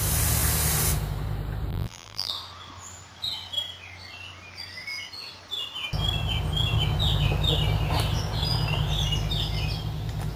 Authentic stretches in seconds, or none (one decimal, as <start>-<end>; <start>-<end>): 0.0-1.7; 2.3-10.4